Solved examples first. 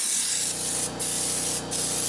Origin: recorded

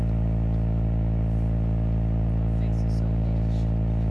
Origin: recorded